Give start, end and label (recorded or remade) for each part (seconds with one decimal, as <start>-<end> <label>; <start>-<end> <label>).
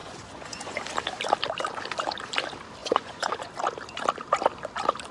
0.0-0.8 remade; 0.8-2.8 recorded; 2.8-3.5 remade; 3.5-5.1 recorded